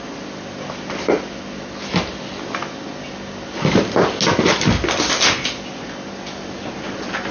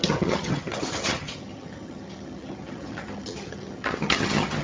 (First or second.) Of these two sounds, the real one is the first